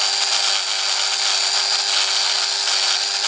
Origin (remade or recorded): recorded